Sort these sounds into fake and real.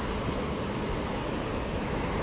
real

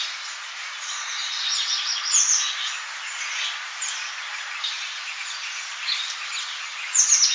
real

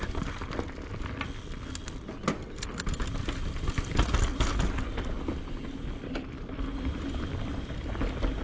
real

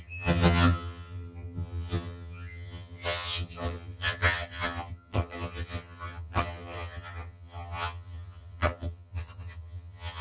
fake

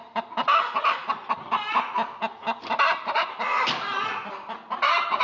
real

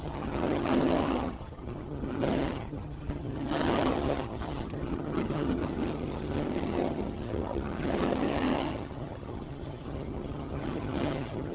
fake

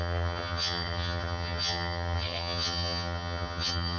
fake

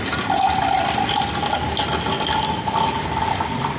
real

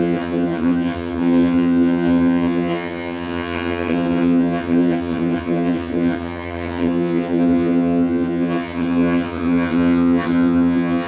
fake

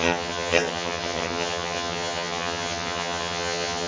fake